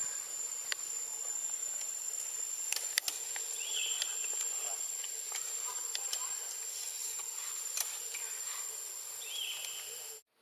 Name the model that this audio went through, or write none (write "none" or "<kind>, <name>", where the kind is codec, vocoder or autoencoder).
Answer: none